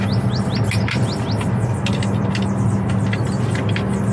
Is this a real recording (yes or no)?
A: yes